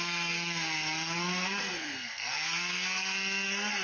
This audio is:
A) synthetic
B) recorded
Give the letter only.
A